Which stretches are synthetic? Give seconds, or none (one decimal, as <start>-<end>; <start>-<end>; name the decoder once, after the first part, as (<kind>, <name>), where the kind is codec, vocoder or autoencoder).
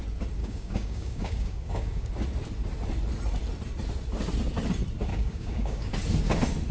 0.4-2.1 (codec, DAC); 5.1-5.9